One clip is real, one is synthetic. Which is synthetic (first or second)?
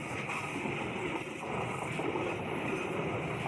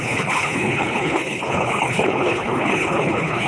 second